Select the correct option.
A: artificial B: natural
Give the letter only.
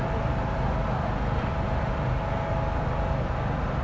B